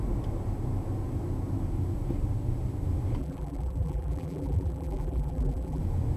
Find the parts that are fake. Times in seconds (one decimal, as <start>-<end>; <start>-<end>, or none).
3.2-5.8